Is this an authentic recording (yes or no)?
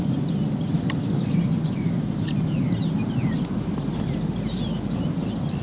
yes